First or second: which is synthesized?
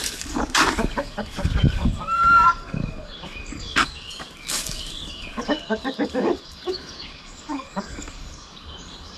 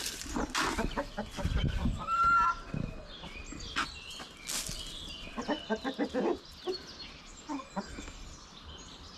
first